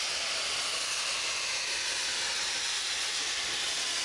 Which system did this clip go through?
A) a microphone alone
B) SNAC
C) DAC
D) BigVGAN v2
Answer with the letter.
A